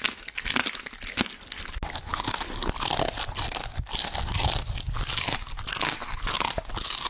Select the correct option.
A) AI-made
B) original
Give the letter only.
B